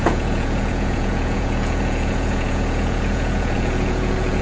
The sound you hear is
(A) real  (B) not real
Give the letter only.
B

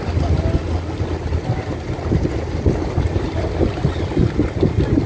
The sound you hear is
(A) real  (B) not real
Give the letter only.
A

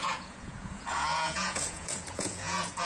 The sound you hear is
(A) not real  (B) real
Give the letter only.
A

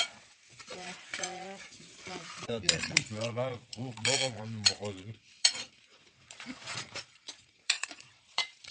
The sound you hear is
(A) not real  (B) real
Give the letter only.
A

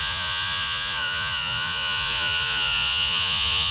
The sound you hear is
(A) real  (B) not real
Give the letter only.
B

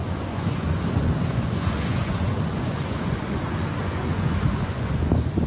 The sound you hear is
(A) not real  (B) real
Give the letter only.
A